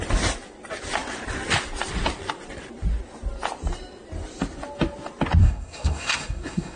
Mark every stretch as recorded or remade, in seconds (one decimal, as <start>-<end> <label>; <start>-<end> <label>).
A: 0.0-5.4 recorded; 5.4-6.8 remade

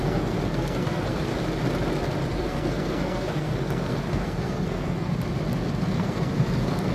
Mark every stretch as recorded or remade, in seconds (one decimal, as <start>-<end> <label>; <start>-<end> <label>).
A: 0.0-1.3 remade; 1.3-2.3 recorded; 2.3-5.1 remade; 5.1-5.9 recorded; 5.9-6.9 remade